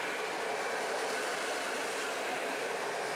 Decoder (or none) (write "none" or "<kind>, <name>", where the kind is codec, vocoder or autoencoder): vocoder, BigVGAN v2